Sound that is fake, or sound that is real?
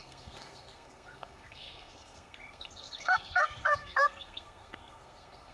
fake